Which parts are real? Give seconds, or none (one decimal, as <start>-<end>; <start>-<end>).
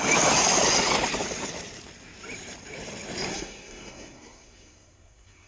0.0-3.3